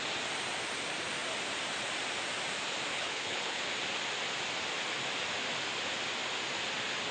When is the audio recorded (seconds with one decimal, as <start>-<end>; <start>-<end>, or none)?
0.0-2.9; 3.6-7.1